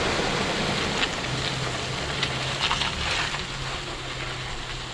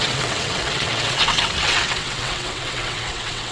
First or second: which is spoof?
second